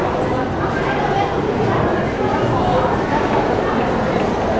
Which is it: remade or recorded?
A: recorded